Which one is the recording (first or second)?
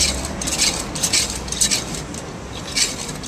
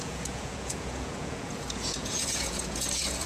first